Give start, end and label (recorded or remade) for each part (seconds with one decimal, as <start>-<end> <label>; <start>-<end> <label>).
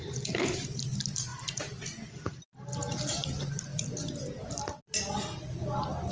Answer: 0.0-6.1 recorded